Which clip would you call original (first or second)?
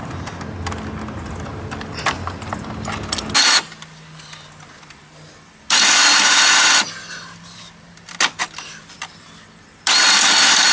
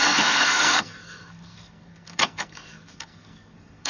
first